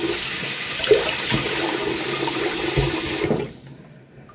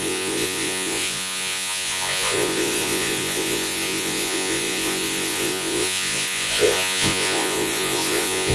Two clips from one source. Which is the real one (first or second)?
first